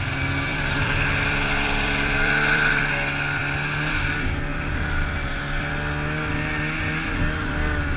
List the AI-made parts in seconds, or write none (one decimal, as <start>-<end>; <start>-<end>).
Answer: 0.5-2.8; 4.5-5.7